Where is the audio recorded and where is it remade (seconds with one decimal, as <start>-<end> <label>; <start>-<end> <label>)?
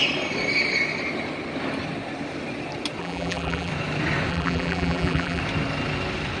0.0-3.0 recorded; 3.0-3.7 remade; 3.7-4.3 recorded; 4.3-5.4 remade; 5.4-6.4 recorded